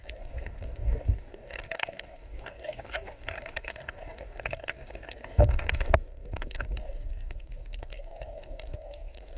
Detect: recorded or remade remade